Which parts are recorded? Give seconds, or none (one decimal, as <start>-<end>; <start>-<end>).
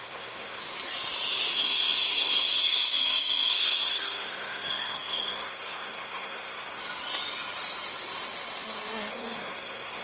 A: 0.6-1.5; 6.8-9.1